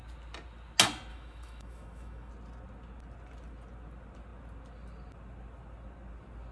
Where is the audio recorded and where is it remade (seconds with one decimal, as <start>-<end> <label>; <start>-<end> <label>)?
0.0-1.1 recorded; 1.1-2.3 remade; 2.3-6.5 recorded